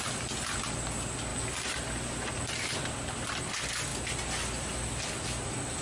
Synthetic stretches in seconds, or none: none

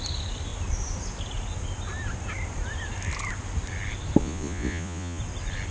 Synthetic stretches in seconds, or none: 4.2-5.2

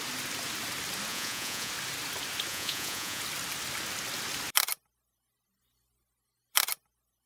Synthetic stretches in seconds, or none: 1.1-1.7; 2.5-3.2

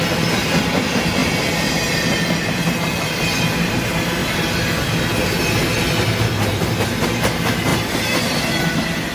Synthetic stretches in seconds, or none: none